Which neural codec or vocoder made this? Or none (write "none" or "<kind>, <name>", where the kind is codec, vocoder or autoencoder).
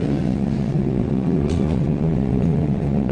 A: vocoder, WaveNeXt